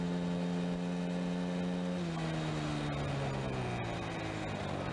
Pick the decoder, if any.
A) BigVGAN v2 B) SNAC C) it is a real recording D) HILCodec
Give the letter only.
C